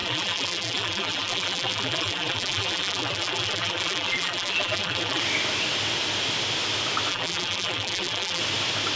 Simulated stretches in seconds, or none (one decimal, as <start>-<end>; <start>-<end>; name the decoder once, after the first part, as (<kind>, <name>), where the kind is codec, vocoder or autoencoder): 0.0-5.2 (vocoder, BigVGAN v2); 7.1-8.4